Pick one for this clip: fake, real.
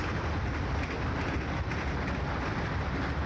real